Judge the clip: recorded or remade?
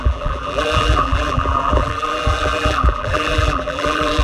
remade